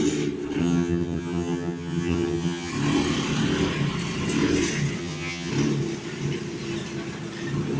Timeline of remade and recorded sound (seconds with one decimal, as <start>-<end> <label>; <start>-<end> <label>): 0.0-0.6 recorded; 0.6-2.7 remade; 2.7-5.0 recorded; 5.0-5.5 remade; 5.5-7.8 recorded